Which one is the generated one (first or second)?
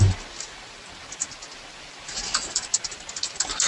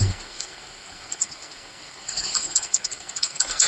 second